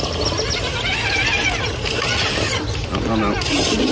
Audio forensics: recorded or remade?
recorded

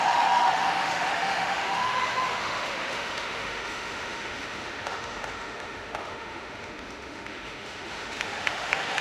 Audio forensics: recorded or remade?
remade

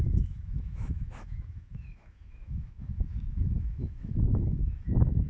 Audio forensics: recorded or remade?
remade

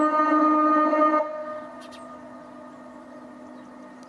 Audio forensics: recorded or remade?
recorded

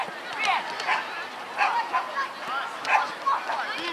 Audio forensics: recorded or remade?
recorded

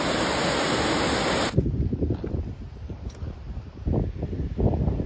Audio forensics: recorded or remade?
recorded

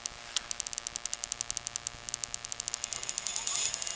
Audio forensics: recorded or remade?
recorded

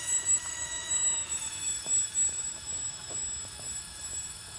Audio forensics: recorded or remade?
remade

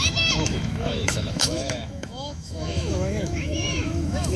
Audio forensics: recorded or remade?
remade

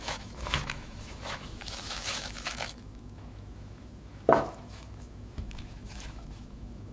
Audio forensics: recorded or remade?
remade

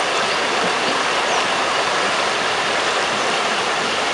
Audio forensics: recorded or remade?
recorded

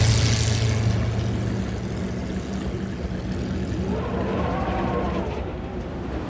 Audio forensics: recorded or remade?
recorded